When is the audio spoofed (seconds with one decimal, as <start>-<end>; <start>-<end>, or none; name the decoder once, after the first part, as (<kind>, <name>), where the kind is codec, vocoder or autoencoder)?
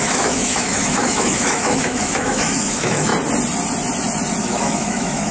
0.0-3.1 (autoencoder, DAC-VAE); 4.4-5.3